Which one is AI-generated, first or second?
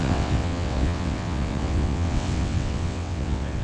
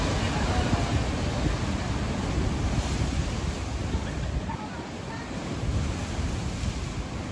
first